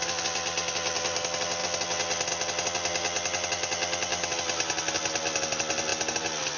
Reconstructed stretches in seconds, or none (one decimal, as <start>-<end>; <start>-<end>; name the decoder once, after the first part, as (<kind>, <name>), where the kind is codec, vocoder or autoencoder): none